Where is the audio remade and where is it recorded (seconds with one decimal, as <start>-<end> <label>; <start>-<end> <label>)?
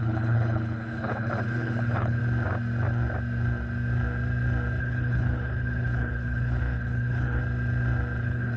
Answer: 0.0-2.2 remade; 2.2-4.8 recorded; 4.8-7.4 remade; 7.4-8.2 recorded; 8.2-8.6 remade